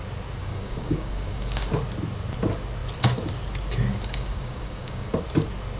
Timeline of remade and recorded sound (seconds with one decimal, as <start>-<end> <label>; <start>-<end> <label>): 0.0-0.4 recorded; 0.4-1.7 remade; 1.7-3.9 recorded; 3.9-5.1 remade; 5.1-5.8 recorded